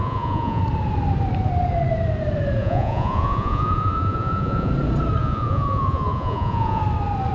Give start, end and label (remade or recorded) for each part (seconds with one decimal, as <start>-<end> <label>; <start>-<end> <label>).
0.0-0.6 remade; 0.6-2.6 recorded; 2.6-4.7 remade; 4.7-5.2 recorded; 5.2-6.8 remade; 6.8-7.3 recorded